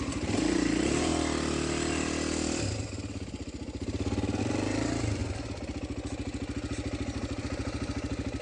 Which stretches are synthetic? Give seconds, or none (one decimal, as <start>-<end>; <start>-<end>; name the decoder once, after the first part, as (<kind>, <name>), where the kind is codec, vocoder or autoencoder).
0.0-1.1 (vocoder, BigVGAN v2); 4.4-5.2; 7.4-8.4